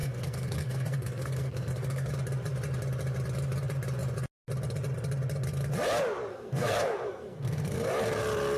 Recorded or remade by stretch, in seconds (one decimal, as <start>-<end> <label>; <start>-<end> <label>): 0.0-2.1 remade; 2.1-6.3 recorded; 6.3-7.9 remade; 7.9-8.6 recorded